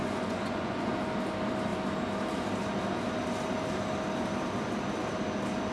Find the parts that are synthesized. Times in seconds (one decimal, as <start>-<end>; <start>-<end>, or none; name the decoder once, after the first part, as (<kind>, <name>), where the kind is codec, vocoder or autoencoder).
0.0-0.9 (vocoder, Vocos)

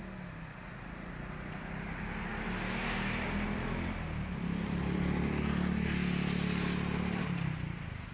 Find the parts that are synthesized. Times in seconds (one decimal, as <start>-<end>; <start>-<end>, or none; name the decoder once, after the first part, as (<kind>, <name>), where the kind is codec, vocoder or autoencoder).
none

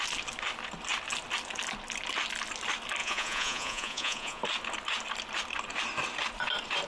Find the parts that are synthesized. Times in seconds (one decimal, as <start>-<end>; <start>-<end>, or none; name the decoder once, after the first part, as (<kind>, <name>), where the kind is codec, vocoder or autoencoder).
3.0-4.4 (vocoder, Vocos)

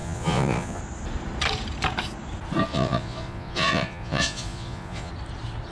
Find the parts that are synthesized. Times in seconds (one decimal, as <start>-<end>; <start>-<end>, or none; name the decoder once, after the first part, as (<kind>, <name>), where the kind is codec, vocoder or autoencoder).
0.0-0.8 (vocoder, Vocos); 2.7-5.1